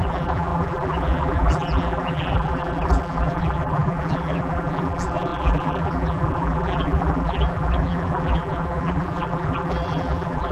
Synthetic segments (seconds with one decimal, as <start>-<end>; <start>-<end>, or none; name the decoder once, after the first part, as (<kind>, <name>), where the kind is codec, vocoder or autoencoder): 0.0-10.5 (vocoder, BigVGAN v2)